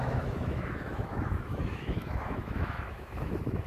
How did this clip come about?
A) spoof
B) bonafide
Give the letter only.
A